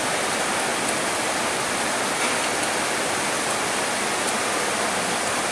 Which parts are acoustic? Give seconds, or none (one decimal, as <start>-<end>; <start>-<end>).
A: 0.0-5.5